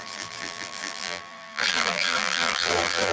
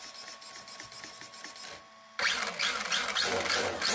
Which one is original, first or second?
second